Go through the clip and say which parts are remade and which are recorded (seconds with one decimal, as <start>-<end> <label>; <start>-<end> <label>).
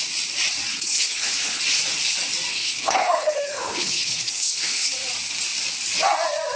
0.0-0.7 recorded; 0.7-1.6 remade; 1.6-2.5 recorded; 2.5-4.9 remade; 4.9-6.6 recorded